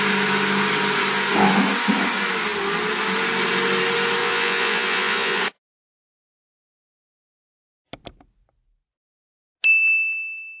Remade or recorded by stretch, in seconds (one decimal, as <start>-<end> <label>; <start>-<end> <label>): 0.0-4.2 recorded; 4.2-5.4 remade; 5.4-10.6 recorded